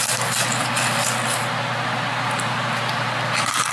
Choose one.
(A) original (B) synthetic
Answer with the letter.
A